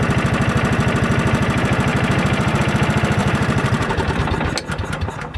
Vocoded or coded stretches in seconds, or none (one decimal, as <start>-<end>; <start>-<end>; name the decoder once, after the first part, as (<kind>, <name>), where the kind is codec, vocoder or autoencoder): 1.9-2.6 (vocoder, BigVGAN v2); 3.2-3.9